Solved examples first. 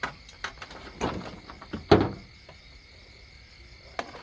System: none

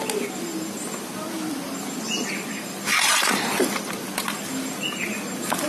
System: none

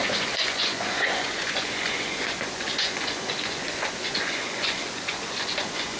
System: vocoder, Vocos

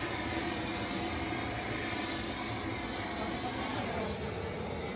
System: none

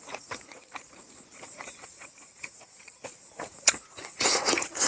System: vocoder, Vocos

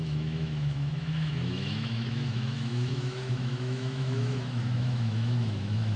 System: autoencoder, DAC-VAE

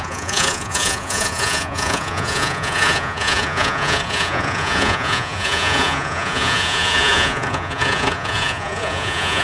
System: vocoder, Vocos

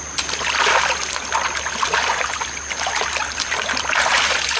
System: none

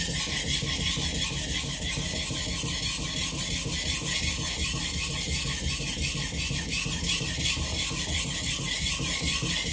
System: none